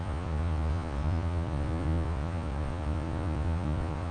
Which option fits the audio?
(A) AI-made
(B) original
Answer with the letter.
A